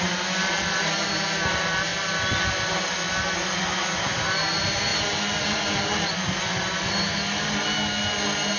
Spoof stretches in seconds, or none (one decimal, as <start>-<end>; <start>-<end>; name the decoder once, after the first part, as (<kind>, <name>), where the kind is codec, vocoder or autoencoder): none